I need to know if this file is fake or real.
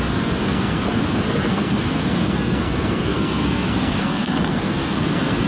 fake